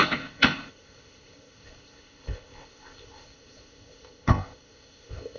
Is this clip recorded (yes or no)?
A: no